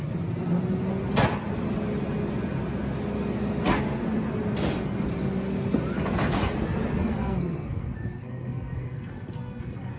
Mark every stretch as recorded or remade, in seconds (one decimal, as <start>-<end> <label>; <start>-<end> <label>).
0.0-7.0 recorded; 7.0-10.0 remade